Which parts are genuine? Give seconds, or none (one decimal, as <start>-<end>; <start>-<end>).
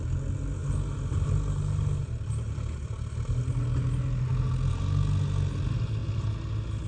0.0-6.9